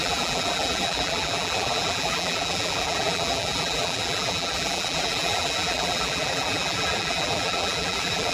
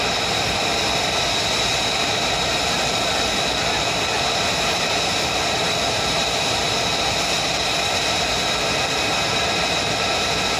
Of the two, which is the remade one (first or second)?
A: first